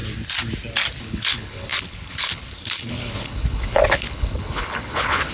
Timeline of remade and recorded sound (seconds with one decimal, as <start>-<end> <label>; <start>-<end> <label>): 0.0-1.0 recorded; 1.0-5.3 remade